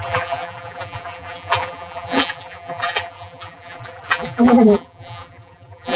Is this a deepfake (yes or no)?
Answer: yes